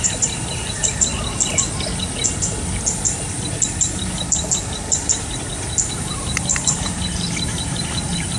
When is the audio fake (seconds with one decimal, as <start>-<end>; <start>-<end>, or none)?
0.0-1.1; 5.9-8.4